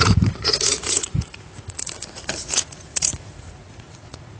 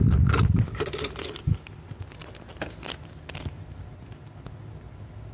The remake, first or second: first